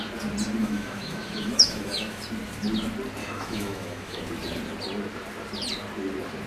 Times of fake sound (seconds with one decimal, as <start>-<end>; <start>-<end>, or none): 0.6-2.2; 3.2-4.2

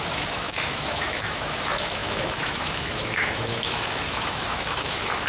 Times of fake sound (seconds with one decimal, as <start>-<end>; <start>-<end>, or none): 0.0-5.3

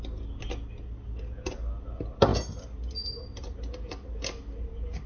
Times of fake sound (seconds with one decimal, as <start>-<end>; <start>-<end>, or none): none

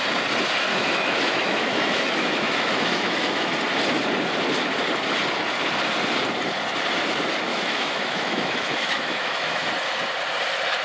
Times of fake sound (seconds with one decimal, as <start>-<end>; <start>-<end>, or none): 0.7-3.5; 7.5-9.7

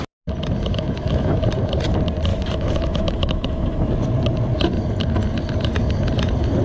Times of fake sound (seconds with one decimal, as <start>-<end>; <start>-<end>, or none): 0.7-1.4; 2.3-3.9